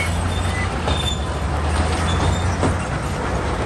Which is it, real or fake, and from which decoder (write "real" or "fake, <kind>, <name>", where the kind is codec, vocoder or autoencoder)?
real